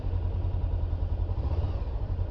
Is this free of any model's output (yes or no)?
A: yes